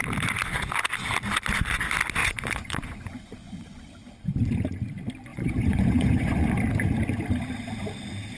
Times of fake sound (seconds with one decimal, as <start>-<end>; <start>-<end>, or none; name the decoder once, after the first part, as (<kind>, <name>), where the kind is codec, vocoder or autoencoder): 2.2-3.9 (vocoder, Vocos); 5.3-6.5